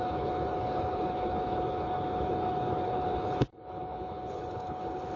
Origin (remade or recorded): remade